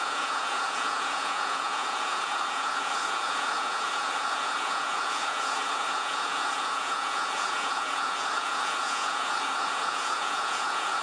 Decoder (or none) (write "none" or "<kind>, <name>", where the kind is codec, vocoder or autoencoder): vocoder, Vocos